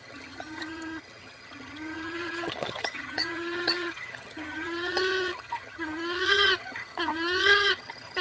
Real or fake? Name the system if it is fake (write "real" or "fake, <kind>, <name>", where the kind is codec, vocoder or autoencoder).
fake, vocoder, HiFi-GAN